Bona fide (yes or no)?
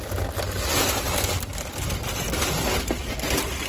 yes